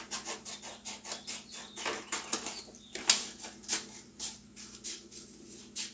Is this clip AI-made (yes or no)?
no